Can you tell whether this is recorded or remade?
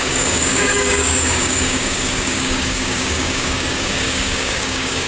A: remade